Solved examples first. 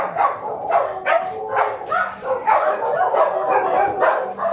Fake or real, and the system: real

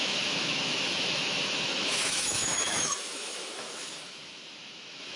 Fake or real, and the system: fake, autoencoder, DAC-VAE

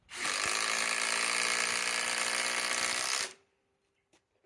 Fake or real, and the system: real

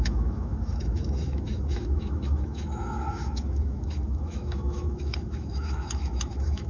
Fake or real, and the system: fake, autoencoder, DAC-VAE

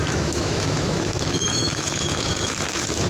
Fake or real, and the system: fake, autoencoder, DAC-VAE